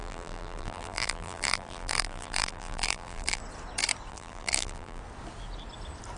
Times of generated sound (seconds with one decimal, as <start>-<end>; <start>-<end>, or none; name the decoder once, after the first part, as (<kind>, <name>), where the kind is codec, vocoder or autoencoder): 0.0-3.4 (vocoder, BigVGAN v2); 4.1-5.0